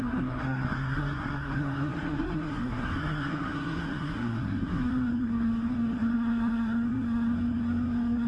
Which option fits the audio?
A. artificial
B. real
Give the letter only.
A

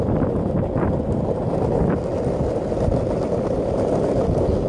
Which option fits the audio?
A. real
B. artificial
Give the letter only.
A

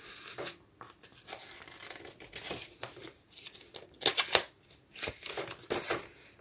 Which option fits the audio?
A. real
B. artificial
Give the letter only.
A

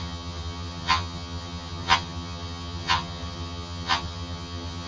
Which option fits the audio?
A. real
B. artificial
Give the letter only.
B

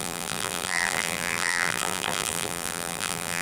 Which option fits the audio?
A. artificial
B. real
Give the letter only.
A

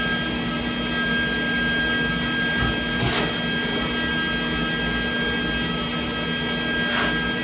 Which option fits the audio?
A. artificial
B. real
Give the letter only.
B